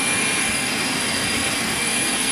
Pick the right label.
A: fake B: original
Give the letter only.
A